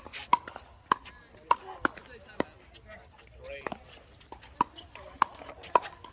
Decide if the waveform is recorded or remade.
recorded